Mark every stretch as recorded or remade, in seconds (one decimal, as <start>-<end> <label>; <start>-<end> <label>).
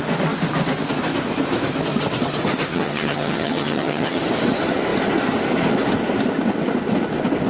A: 0.0-2.7 recorded; 2.7-4.2 remade; 4.2-7.5 recorded